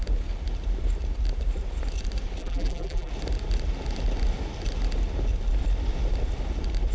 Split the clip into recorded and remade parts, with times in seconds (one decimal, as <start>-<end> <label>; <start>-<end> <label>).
0.0-2.4 recorded; 2.4-3.1 remade; 3.1-6.9 recorded